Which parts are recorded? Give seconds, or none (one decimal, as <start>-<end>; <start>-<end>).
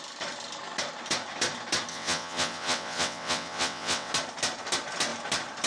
0.0-1.9; 4.1-5.7